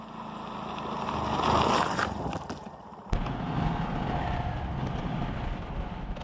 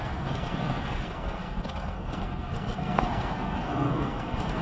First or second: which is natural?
first